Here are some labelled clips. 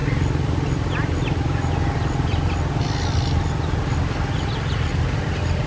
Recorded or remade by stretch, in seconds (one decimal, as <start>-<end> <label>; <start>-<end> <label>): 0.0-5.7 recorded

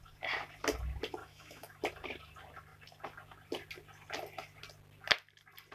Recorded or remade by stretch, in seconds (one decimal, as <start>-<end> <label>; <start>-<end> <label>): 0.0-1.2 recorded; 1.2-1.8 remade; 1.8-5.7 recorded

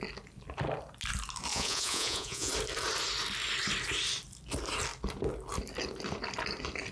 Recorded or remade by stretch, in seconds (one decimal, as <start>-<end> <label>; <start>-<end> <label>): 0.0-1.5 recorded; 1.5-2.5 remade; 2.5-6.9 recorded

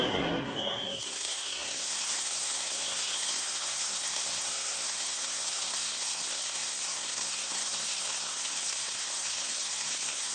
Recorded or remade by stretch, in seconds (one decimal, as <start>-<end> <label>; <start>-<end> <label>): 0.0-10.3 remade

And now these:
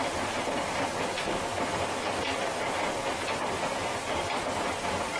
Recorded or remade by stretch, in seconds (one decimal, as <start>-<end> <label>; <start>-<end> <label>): 0.0-5.2 recorded